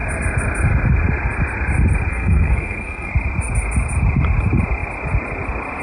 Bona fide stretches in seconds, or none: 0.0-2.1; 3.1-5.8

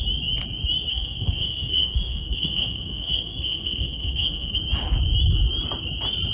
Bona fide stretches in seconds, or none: 0.0-0.9; 4.6-6.3

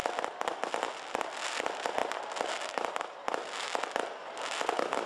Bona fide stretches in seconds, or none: 0.0-5.1

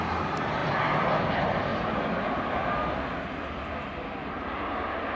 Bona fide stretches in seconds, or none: 0.0-5.2

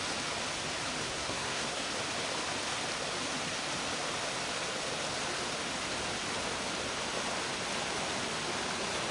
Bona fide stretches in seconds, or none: 0.0-1.0; 1.9-9.1

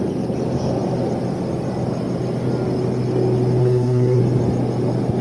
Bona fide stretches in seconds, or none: 0.0-3.6; 4.2-5.2